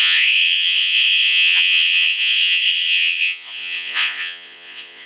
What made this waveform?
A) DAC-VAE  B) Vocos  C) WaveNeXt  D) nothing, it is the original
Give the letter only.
B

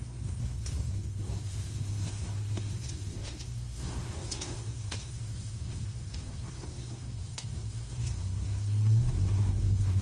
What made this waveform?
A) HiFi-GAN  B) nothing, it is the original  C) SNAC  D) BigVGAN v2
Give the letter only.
C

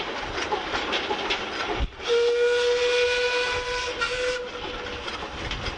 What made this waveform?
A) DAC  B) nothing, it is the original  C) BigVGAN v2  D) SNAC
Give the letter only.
B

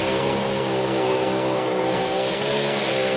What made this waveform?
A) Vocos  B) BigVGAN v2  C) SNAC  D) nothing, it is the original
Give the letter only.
C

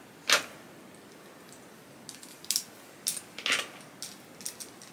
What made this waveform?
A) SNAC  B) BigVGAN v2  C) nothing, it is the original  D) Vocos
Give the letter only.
C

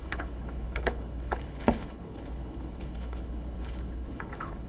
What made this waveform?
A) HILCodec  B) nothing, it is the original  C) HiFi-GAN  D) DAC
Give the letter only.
A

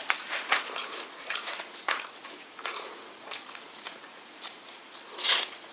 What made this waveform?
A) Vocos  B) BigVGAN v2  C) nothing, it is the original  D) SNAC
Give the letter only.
A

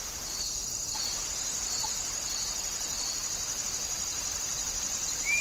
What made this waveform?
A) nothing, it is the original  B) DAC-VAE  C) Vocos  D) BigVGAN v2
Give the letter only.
A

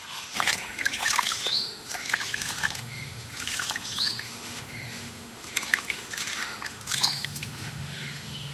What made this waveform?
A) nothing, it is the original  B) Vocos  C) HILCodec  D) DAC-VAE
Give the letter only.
D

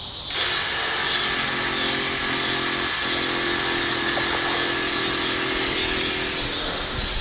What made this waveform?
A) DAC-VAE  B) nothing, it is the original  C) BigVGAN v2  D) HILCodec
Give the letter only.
B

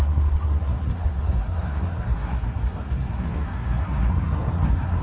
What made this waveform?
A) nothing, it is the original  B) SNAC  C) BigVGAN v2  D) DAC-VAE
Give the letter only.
B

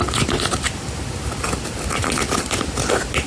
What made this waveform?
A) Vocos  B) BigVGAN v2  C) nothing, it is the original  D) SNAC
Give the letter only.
C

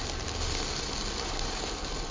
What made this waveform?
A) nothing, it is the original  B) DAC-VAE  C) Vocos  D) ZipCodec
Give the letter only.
A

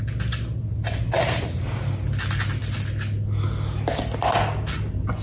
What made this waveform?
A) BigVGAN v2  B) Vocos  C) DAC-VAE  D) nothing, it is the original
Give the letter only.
D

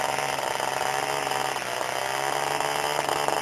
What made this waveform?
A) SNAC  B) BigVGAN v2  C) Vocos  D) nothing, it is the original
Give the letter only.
D